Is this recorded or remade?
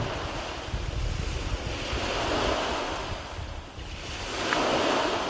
recorded